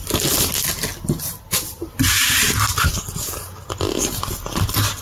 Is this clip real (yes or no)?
yes